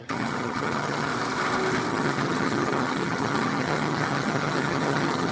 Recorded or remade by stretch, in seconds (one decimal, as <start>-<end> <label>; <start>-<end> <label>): 0.0-1.1 remade; 1.1-1.9 recorded; 1.9-5.3 remade